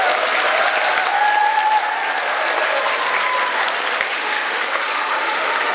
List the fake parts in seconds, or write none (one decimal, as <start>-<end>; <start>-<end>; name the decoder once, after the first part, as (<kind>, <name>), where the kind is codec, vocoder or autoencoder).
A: 4.1-5.7 (autoencoder, DAC-VAE)